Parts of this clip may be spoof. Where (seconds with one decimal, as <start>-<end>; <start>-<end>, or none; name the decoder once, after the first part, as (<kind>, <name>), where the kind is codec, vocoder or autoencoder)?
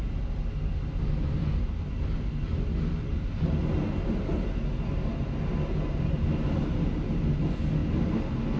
none